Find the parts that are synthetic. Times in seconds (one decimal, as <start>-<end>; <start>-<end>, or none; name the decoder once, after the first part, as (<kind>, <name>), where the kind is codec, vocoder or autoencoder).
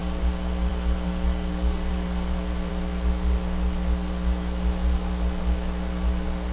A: none